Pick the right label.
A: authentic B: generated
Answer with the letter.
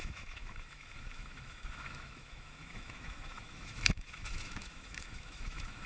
B